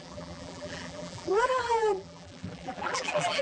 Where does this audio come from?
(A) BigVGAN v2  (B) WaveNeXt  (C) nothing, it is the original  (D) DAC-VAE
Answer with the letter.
A